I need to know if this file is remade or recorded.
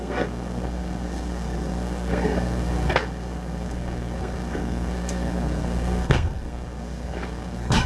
remade